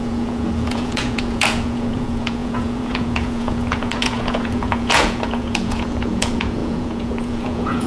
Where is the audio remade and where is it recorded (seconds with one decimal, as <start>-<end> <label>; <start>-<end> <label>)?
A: 0.0-7.9 remade